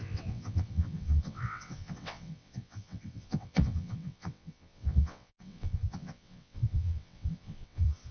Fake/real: fake